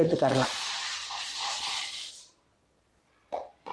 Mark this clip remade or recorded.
remade